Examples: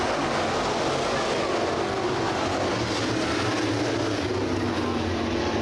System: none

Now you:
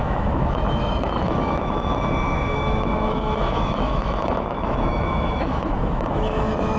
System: autoencoder, DAC-VAE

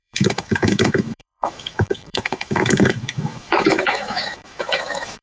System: autoencoder, DAC-VAE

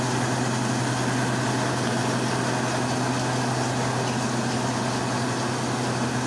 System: none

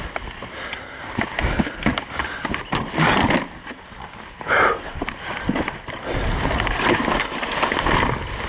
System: none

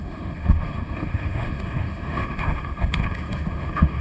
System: autoencoder, DAC-VAE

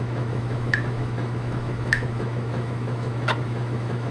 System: autoencoder, DAC-VAE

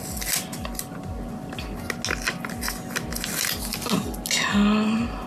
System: none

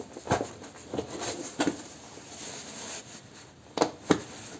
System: none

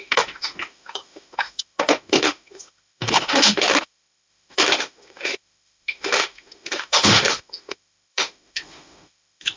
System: autoencoder, DAC-VAE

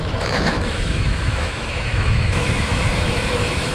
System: autoencoder, DAC-VAE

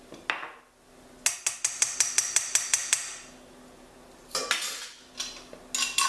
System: none